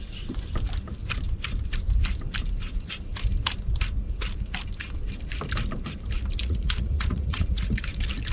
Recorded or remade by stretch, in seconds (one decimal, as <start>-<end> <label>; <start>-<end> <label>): 0.0-6.4 recorded; 6.4-7.7 remade; 7.7-8.3 recorded